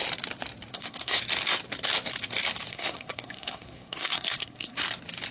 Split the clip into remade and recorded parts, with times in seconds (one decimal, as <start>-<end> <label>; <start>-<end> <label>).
0.0-0.7 recorded; 0.7-1.2 remade; 1.2-2.7 recorded; 2.7-4.8 remade; 4.8-5.3 recorded